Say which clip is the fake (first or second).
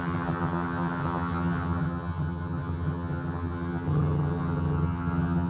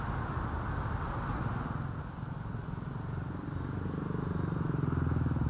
first